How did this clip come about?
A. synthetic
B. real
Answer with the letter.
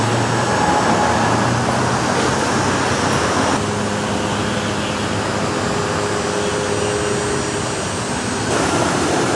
B